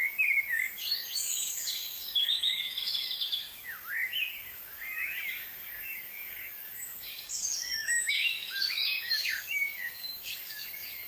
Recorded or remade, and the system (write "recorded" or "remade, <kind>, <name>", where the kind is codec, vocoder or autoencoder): remade, codec, DAC